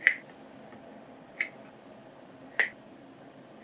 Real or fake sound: real